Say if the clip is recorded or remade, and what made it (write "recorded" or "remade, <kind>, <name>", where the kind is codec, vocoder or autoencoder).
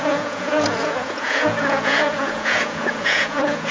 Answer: remade, vocoder, Vocos